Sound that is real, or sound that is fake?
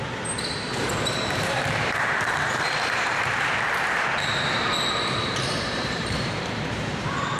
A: fake